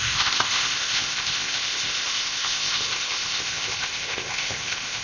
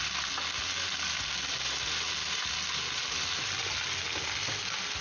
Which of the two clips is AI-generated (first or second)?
first